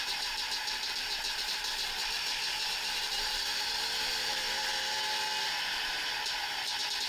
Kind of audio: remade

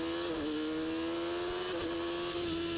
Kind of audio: recorded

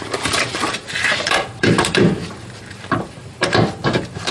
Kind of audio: remade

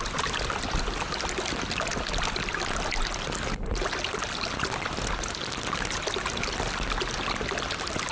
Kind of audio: recorded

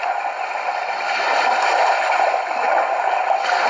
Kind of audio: recorded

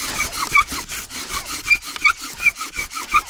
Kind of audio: recorded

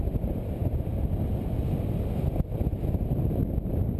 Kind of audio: recorded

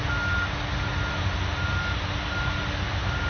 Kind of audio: recorded